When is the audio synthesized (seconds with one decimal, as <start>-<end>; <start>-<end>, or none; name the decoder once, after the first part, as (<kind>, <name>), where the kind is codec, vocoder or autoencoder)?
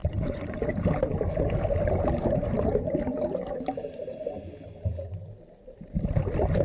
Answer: 0.0-0.7 (vocoder, Vocos)